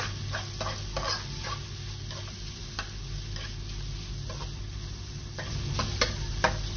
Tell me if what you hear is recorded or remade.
recorded